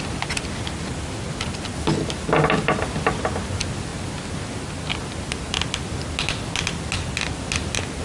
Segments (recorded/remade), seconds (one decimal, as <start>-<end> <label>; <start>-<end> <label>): 0.0-8.0 recorded